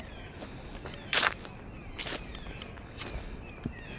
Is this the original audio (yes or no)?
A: yes